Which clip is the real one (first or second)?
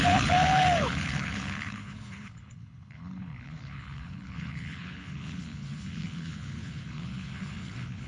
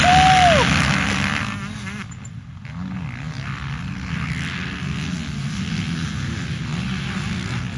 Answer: second